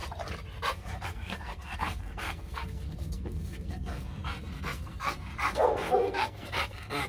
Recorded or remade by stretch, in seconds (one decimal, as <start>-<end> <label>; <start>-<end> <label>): 0.0-0.7 recorded; 0.7-7.1 remade